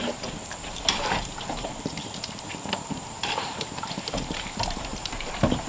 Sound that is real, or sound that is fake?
fake